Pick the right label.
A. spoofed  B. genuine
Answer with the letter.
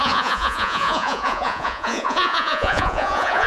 A